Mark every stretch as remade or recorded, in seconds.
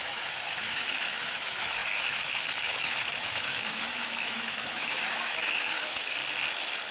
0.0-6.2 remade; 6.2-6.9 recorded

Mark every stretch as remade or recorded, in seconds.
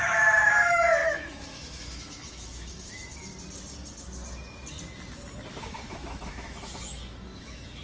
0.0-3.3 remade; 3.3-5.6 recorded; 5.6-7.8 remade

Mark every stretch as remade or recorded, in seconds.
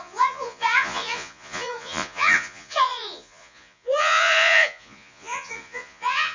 0.0-6.3 remade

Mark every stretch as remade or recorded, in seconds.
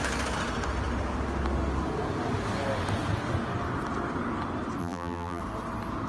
0.0-4.8 recorded; 4.8-5.4 remade; 5.4-6.1 recorded